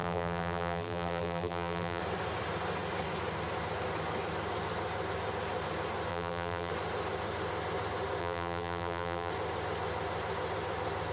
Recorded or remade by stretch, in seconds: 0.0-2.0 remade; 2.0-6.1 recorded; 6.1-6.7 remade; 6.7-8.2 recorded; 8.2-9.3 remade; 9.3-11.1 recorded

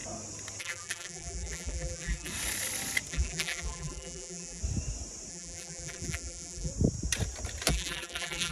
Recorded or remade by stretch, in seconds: 0.0-0.6 recorded; 0.6-2.3 remade; 2.3-3.1 recorded; 3.1-4.6 remade; 4.6-5.3 recorded; 5.3-6.7 remade; 6.7-7.7 recorded; 7.7-8.5 remade